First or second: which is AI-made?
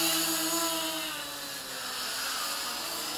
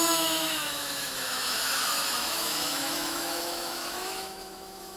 second